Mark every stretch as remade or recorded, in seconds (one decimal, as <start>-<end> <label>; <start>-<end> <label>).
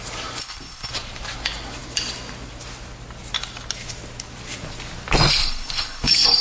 0.0-0.4 recorded; 0.4-0.9 remade; 0.9-5.3 recorded; 5.3-6.4 remade